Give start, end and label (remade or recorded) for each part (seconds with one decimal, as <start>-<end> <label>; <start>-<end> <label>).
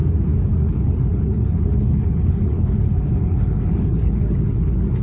0.0-0.6 recorded; 0.6-5.0 remade